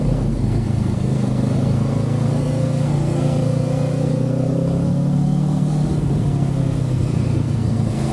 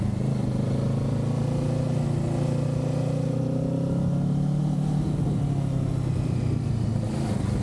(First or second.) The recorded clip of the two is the second